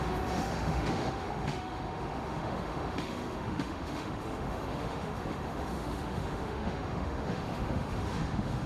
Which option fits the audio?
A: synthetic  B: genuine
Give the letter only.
A